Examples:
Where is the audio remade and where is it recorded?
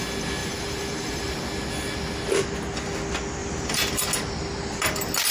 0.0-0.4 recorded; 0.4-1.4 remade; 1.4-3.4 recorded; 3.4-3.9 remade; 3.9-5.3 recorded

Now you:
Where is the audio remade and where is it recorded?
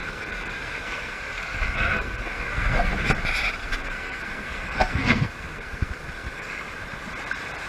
0.0-2.9 remade; 2.9-3.6 recorded; 3.6-6.5 remade; 6.5-7.7 recorded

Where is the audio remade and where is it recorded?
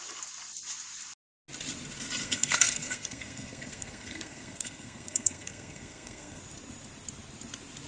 0.0-2.2 recorded; 2.2-6.4 remade; 6.4-7.9 recorded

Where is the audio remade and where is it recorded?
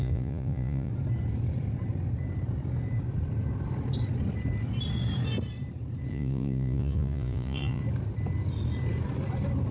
0.0-0.9 remade; 0.9-6.1 recorded; 6.1-7.8 remade; 7.8-9.7 recorded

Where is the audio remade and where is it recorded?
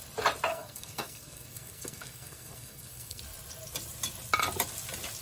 0.0-0.5 recorded; 0.5-3.2 remade; 3.2-5.2 recorded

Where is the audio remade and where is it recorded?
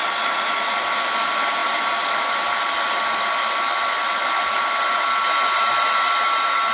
0.0-6.7 recorded